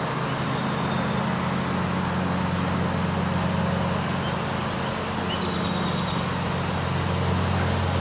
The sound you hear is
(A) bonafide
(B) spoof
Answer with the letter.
A